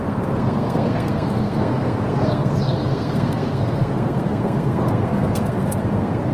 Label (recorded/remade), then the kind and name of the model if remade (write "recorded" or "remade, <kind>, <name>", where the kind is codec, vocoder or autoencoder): remade, codec, SNAC